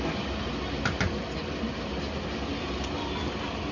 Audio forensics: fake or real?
real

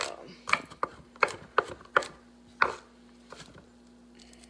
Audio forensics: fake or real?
real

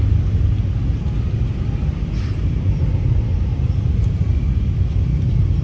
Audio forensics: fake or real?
real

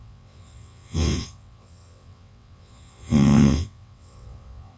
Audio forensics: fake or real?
fake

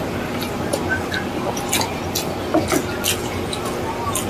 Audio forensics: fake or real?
real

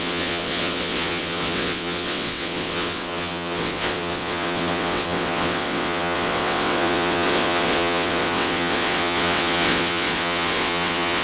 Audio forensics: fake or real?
fake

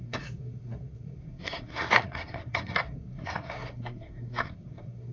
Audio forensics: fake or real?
fake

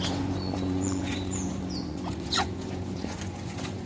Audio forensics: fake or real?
fake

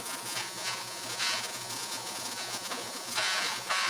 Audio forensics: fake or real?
fake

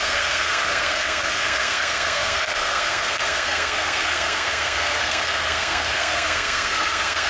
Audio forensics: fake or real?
fake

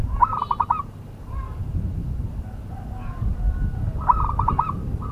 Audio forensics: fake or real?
real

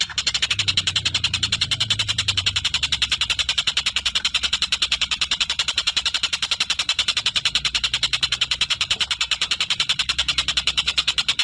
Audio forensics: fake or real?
fake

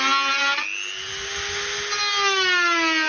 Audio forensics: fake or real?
real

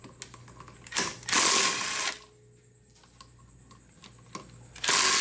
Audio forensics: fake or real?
real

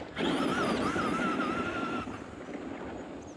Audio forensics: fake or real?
real